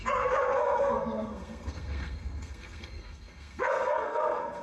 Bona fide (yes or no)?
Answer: no